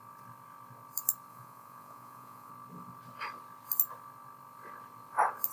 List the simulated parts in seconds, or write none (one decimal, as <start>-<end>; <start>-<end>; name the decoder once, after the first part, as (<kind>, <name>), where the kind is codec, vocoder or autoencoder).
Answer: 1.3-2.5 (vocoder, Vocos)